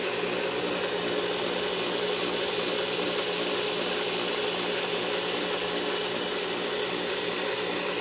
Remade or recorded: recorded